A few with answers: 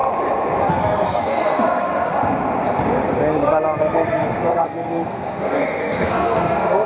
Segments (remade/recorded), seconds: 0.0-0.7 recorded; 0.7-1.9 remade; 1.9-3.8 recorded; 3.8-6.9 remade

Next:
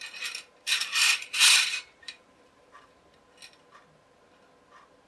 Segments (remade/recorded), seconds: 0.0-0.8 recorded; 0.8-3.0 remade; 3.0-5.1 recorded